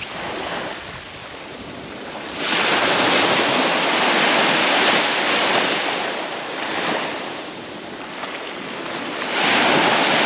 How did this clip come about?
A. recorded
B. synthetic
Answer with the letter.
A